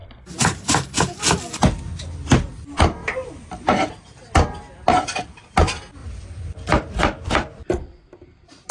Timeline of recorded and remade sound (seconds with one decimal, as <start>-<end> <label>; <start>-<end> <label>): 0.0-1.0 remade; 1.0-3.0 recorded; 3.0-3.9 remade; 3.9-6.0 recorded; 6.0-8.1 remade; 8.1-8.7 recorded